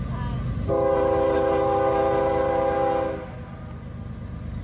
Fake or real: real